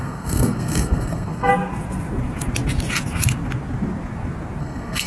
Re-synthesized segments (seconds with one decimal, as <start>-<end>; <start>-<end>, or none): 0.0-1.5; 4.6-5.1